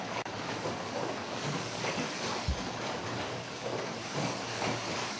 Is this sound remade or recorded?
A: remade